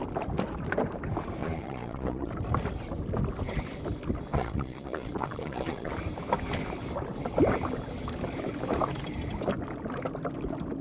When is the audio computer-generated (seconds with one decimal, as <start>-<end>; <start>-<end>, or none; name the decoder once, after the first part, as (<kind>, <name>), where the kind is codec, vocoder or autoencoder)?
1.4-2.3 (vocoder, Vocos); 4.3-5.9